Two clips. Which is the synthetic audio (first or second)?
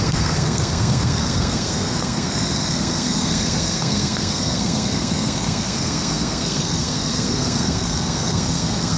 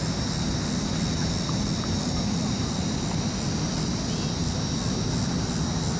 first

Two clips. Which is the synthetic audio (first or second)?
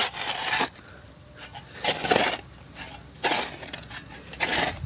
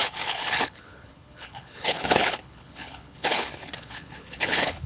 second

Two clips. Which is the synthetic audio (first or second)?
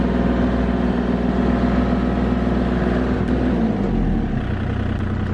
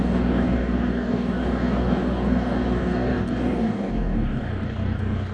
second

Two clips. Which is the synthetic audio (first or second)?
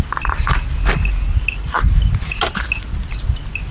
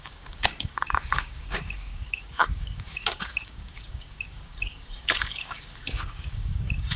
second